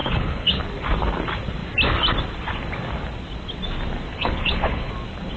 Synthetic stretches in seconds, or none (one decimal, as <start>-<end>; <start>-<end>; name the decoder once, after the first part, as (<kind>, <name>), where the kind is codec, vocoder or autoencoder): 0.0-0.6 (codec, HILCodec); 4.1-4.9